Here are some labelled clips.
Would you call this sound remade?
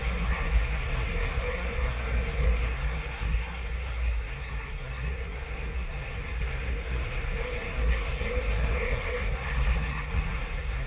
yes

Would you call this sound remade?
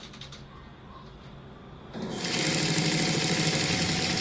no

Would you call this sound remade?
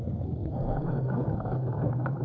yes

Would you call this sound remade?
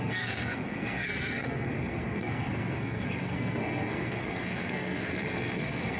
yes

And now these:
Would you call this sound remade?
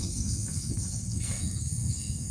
yes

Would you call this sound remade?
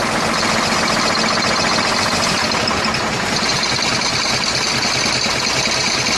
no